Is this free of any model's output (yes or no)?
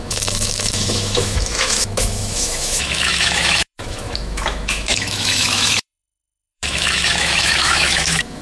no